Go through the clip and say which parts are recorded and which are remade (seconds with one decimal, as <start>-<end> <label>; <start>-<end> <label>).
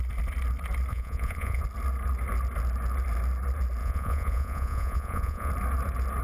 0.0-0.9 recorded; 0.9-1.6 remade; 1.6-3.8 recorded; 3.8-5.5 remade; 5.5-6.2 recorded